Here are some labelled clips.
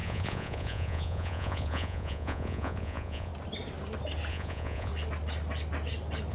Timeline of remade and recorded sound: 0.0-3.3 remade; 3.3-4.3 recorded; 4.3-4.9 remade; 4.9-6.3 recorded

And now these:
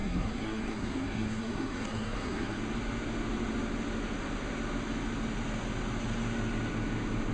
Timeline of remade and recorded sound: 0.0-2.6 remade; 2.6-7.3 recorded

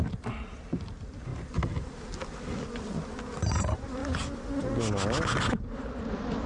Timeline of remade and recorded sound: 0.0-6.5 recorded